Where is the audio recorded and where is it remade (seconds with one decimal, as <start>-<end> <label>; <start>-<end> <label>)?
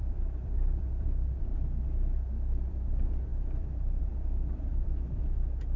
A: 0.0-1.5 remade; 1.5-2.6 recorded; 2.6-5.8 remade